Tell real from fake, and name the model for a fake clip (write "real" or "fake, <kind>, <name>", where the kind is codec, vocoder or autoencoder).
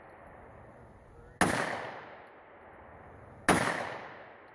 real